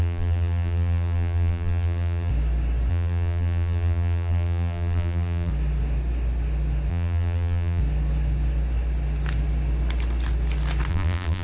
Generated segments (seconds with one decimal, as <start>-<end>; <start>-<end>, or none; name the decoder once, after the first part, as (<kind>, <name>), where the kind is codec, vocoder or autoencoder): 0.0-2.3 (vocoder, BigVGAN v2); 2.9-5.5; 6.9-7.8; 10.9-11.4